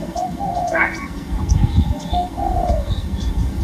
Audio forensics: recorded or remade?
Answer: remade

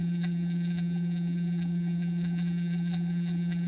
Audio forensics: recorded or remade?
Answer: remade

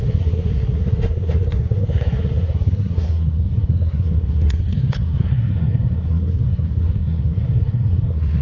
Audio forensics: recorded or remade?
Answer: remade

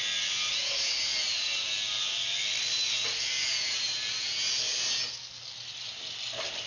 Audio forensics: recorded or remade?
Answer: recorded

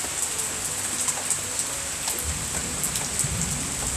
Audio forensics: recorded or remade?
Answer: recorded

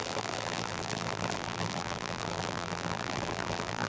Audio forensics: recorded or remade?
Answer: remade